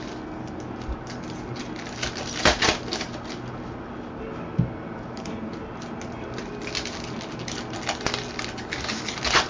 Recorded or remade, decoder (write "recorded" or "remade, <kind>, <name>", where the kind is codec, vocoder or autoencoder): recorded